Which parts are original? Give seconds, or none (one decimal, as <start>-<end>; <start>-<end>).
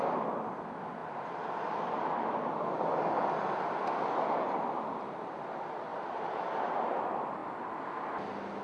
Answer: 0.0-5.9; 6.7-8.6